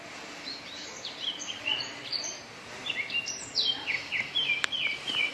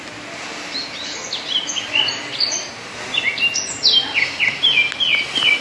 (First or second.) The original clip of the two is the second